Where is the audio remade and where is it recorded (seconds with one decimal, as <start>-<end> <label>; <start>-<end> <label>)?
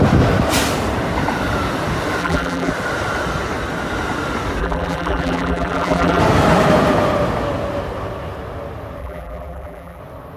0.0-2.2 recorded; 2.2-2.7 remade; 2.7-4.6 recorded; 4.6-6.2 remade; 6.2-9.0 recorded; 9.0-10.0 remade; 10.0-10.4 recorded